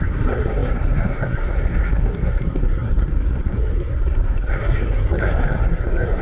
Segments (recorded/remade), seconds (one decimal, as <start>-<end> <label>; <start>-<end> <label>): 0.0-6.2 remade